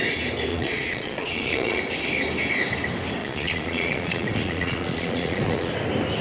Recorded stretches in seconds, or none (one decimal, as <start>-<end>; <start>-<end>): 0.0-0.5; 1.8-3.2; 5.7-6.2